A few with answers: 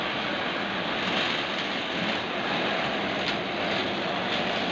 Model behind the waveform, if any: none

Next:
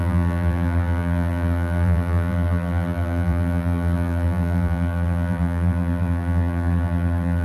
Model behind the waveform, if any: vocoder, BigVGAN v2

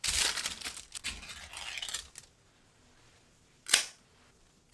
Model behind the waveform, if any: none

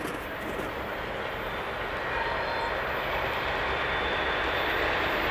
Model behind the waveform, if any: none